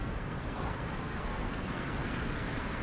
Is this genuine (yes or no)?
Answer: no